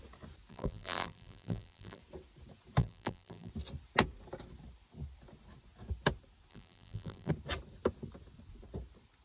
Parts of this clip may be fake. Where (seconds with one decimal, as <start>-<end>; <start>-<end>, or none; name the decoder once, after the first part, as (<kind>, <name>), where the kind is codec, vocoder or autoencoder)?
0.5-2.0 (vocoder, BigVGAN v2); 2.8-3.5; 6.5-7.3